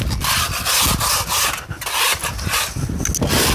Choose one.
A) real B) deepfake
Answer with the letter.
A